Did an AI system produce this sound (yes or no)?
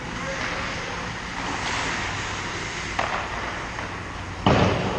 no